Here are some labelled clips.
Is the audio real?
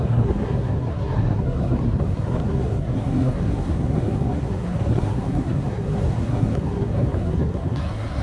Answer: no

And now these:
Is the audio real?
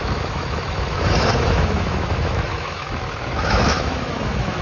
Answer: no